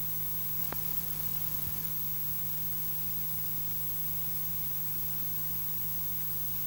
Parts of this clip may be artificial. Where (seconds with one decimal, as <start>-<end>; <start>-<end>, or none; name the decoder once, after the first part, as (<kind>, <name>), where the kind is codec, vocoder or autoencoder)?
0.6-1.9 (vocoder, Vocos)